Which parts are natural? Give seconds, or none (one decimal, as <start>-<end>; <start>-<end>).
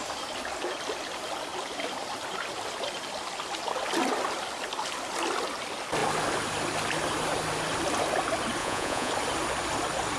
0.0-8.6; 9.1-10.2